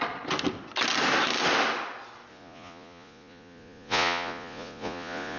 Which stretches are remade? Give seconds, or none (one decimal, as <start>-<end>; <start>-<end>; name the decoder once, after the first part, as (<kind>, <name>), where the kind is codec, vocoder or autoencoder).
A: 2.3-5.4 (vocoder, Vocos)